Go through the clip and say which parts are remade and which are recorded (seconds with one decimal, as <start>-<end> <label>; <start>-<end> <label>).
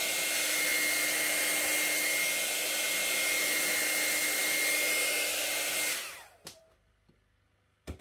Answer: 0.0-8.0 recorded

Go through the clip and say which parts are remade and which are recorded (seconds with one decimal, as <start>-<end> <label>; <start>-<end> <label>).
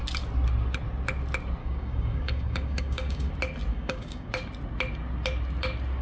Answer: 0.0-1.6 recorded; 1.6-3.3 remade; 3.3-3.7 recorded; 3.7-4.3 remade; 4.3-6.0 recorded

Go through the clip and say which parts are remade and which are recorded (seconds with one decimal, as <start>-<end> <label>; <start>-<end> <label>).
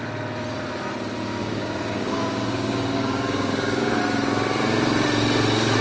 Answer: 0.0-1.4 recorded; 1.4-4.0 remade; 4.0-5.8 recorded